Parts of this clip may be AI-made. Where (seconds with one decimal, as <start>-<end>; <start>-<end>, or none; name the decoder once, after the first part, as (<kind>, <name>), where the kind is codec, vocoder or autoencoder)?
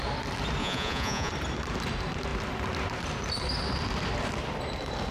0.6-1.3 (vocoder, Vocos)